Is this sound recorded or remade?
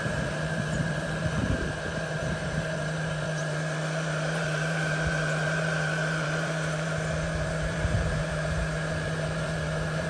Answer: remade